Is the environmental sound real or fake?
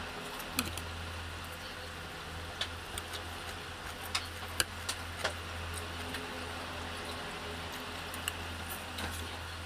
real